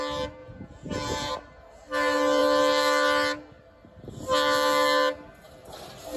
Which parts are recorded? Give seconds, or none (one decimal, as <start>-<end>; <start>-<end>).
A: 0.0-0.4; 1.3-6.2